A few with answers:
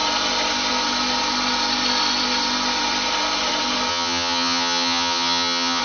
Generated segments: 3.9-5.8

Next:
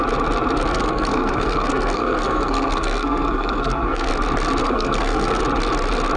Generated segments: 0.7-4.1; 4.6-5.4

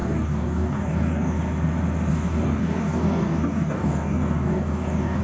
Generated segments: 0.0-1.4; 2.1-5.2

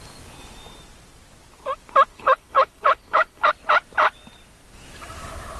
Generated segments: 2.1-3.5